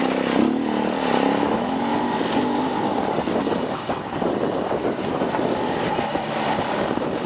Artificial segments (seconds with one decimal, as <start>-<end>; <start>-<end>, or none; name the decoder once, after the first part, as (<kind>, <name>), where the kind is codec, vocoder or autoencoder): none